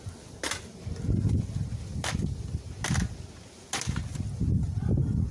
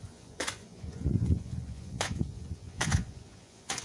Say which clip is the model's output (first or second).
second